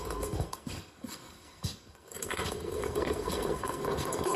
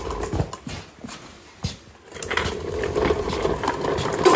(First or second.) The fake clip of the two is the first